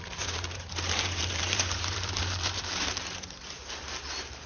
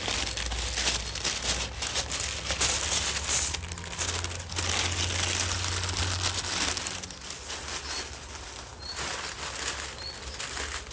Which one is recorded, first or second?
second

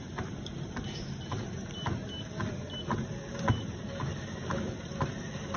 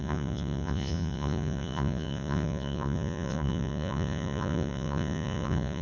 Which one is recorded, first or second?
first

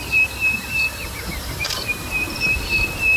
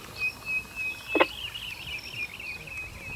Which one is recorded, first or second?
second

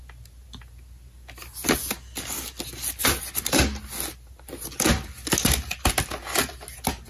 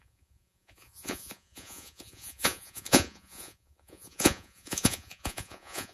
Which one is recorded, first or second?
first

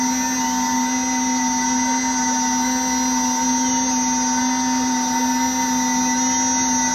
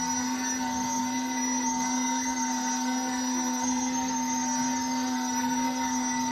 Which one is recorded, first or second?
first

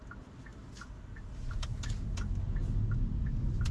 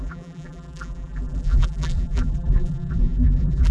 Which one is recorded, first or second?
first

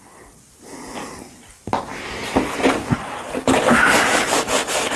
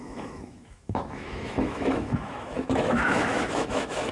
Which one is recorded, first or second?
first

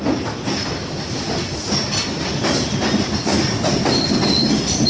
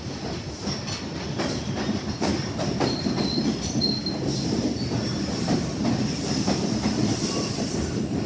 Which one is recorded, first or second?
first